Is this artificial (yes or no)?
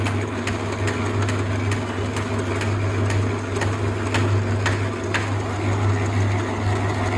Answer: no